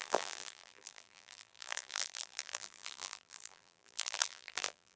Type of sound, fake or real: fake